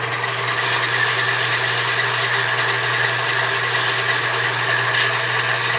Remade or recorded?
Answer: recorded